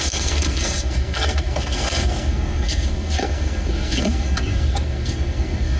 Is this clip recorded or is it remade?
remade